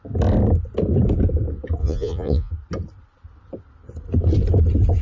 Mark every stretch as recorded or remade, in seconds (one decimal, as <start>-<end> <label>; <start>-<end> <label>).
0.0-1.8 recorded; 1.8-2.5 remade; 2.5-5.0 recorded